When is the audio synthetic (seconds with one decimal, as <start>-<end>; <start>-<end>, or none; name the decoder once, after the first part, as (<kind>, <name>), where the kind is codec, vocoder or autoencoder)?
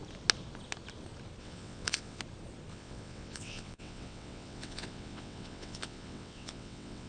1.4-2.2 (vocoder, WaveNeXt); 2.7-7.1